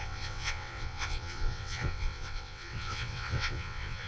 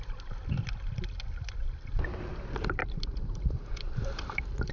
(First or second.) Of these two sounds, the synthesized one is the first